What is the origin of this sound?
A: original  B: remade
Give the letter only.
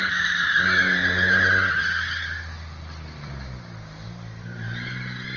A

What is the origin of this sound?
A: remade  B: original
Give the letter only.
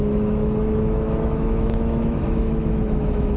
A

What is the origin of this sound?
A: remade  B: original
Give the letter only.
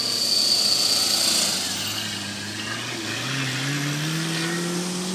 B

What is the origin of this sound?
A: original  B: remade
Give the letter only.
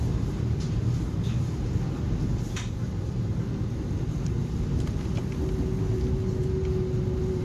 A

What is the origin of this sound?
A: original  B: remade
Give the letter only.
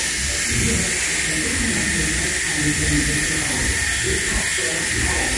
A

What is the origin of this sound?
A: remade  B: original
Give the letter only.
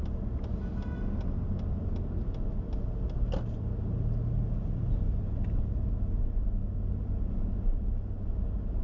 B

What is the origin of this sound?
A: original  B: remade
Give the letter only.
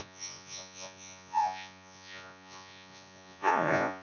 B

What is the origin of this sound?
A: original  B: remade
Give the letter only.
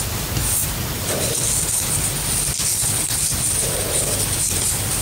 A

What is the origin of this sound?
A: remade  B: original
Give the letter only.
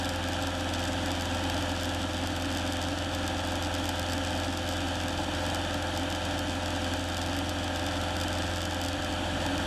B